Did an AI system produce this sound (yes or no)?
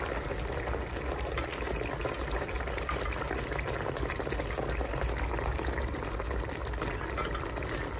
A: no